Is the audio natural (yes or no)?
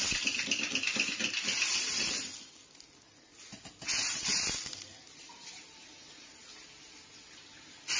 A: yes